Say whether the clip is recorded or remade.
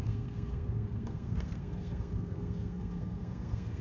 remade